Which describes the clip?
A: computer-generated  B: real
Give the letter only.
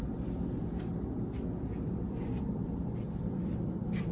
A